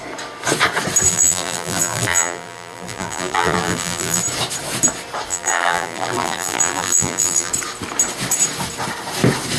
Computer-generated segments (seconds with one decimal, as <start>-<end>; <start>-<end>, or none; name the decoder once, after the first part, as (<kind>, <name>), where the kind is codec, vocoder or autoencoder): 1.1-4.2 (vocoder, BigVGAN v2); 5.3-7.5